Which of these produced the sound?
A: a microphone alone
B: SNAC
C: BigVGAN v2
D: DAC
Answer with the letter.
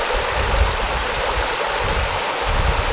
A